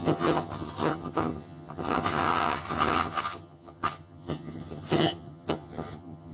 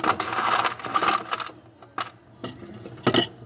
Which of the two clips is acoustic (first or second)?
second